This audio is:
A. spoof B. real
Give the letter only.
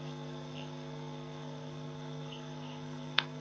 A